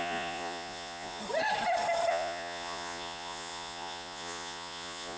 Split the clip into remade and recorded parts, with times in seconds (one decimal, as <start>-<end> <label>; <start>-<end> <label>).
0.0-1.2 remade; 1.2-2.1 recorded; 2.1-5.2 remade